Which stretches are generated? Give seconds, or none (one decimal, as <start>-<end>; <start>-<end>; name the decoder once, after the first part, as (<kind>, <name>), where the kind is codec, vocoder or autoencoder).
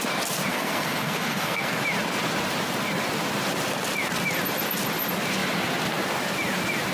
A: 0.5-1.8 (codec, SNAC)